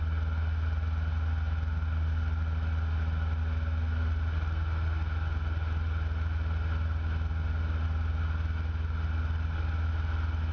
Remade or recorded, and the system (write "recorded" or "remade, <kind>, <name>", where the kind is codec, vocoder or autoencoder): recorded